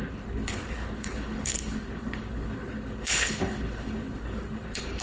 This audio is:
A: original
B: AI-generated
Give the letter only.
B